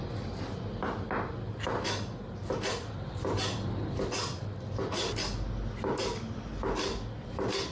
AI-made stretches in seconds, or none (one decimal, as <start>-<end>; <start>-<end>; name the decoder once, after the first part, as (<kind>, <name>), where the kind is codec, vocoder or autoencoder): none